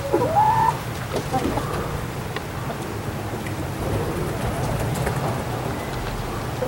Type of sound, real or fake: real